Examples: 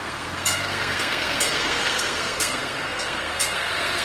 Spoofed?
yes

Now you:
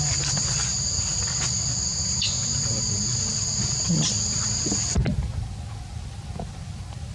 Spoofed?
no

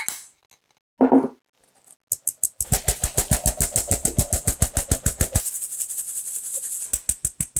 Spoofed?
no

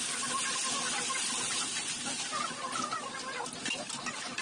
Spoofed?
no